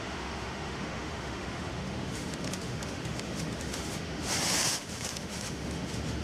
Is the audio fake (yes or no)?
yes